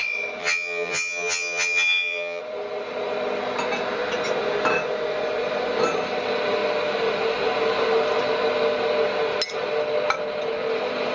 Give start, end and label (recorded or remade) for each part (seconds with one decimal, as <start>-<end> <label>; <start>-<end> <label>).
0.0-0.4 recorded; 0.4-2.4 remade; 2.4-11.1 recorded